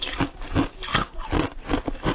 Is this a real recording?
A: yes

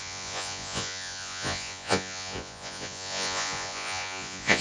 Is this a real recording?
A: no